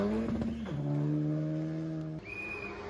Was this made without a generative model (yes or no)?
yes